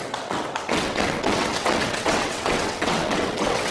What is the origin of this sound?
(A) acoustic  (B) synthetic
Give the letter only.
B